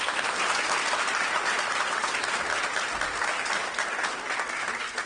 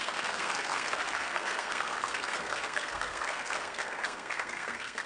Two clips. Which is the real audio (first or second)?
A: first